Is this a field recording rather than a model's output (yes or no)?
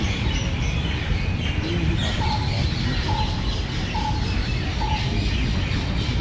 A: yes